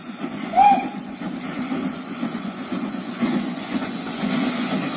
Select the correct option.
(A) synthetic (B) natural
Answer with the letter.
A